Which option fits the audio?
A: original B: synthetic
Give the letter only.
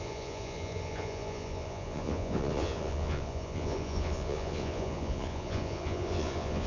B